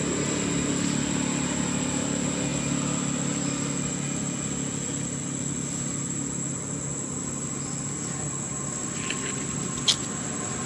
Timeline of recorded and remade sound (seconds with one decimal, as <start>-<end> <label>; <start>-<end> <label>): 0.0-10.7 recorded